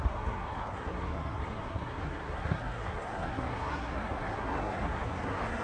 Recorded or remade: remade